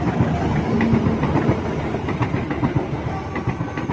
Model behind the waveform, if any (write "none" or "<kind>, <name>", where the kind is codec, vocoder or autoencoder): none